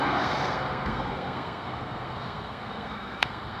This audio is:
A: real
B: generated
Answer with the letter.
B